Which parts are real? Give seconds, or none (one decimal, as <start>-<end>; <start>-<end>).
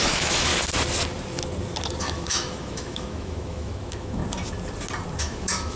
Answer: 0.5-2.0; 4.2-5.2